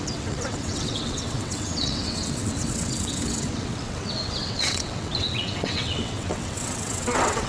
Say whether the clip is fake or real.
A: fake